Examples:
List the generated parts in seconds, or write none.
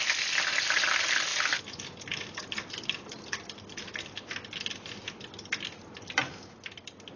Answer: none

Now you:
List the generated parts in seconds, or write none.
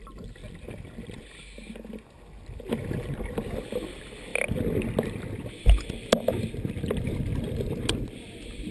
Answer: 0.0-0.4 (vocoder, BigVGAN v2); 3.9-4.3; 5.2-8.7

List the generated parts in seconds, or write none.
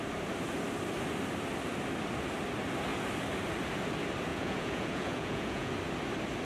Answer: 4.3-5.7 (vocoder, Vocos)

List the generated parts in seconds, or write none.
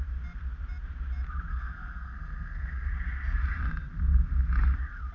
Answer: 1.5-2.9 (codec, SNAC)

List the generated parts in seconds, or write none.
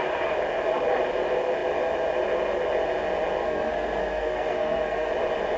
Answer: 3.4-5.1 (codec, SNAC)